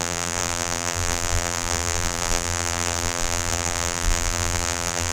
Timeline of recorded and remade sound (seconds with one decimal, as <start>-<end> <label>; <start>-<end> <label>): 0.0-5.1 remade